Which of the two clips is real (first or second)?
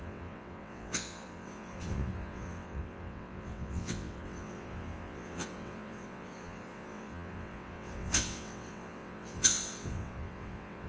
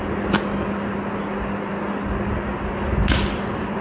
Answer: second